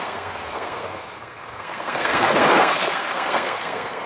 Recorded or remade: remade